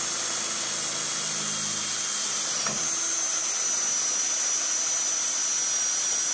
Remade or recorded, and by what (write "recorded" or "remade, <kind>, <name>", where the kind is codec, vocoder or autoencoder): recorded